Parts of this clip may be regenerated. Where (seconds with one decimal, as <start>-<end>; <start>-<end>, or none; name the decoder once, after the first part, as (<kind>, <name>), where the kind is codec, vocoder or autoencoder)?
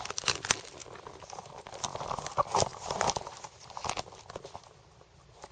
2.7-3.8 (vocoder, BigVGAN v2)